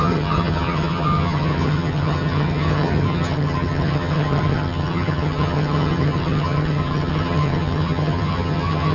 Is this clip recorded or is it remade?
remade